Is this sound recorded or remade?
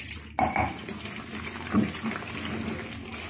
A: recorded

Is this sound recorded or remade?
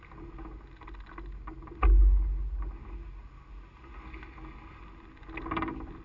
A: recorded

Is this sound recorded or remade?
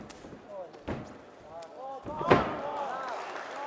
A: recorded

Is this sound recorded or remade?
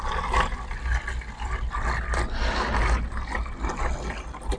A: recorded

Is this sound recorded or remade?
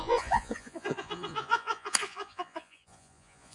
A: remade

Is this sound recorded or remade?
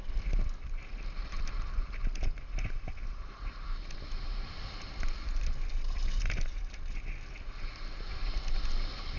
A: recorded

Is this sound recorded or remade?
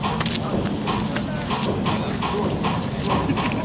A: recorded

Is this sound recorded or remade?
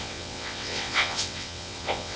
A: remade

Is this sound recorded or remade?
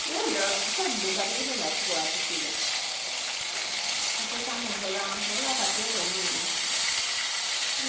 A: recorded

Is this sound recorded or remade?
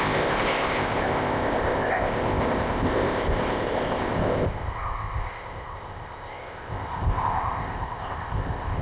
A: remade